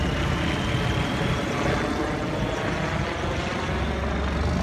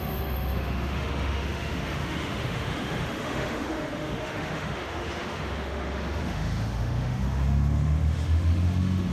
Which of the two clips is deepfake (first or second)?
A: second